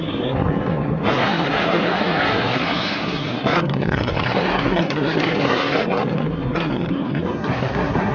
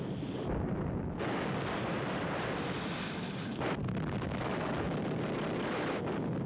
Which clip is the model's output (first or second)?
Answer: first